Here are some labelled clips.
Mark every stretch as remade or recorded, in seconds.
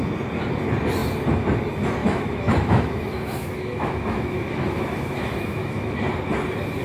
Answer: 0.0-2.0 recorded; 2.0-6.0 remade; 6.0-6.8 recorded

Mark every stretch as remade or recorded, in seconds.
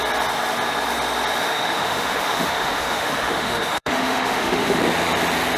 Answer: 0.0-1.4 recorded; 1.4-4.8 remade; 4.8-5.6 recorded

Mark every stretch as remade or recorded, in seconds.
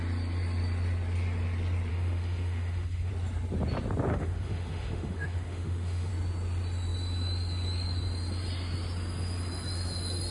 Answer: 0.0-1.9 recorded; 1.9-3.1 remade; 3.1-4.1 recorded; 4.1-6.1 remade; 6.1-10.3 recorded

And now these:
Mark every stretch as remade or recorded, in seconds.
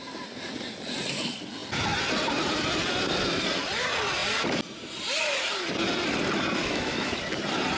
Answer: 0.0-6.6 recorded; 6.6-7.2 remade; 7.2-7.8 recorded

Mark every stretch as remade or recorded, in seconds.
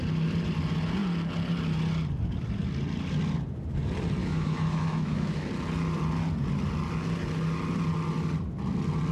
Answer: 0.0-4.2 recorded; 4.2-5.5 remade; 5.5-9.1 recorded